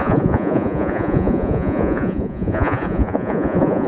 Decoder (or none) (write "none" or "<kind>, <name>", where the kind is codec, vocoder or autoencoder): vocoder, Vocos